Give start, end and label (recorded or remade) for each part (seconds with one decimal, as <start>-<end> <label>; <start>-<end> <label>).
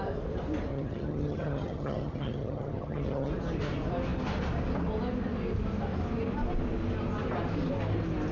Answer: 0.0-0.7 recorded; 0.7-3.3 remade; 3.3-8.3 recorded